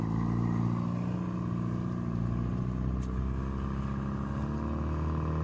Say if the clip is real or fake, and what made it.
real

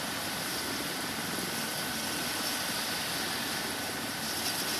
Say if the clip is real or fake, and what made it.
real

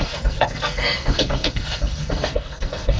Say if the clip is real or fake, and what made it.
fake, codec, SNAC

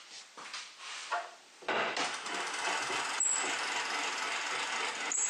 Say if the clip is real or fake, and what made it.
real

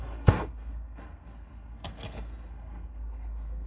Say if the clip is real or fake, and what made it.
fake, codec, SNAC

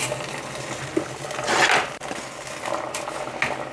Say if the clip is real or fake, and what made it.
real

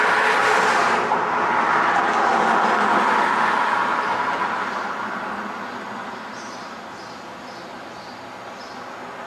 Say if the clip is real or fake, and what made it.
real